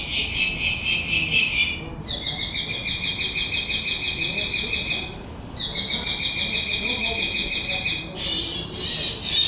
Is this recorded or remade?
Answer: recorded